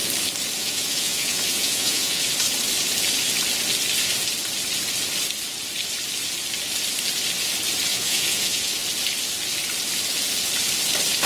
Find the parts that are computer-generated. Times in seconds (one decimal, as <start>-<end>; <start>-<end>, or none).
0.6-2.2; 7.9-8.7